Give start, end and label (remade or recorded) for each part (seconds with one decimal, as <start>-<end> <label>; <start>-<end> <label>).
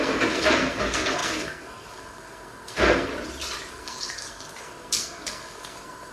0.0-3.1 remade; 3.1-3.7 recorded; 3.7-6.1 remade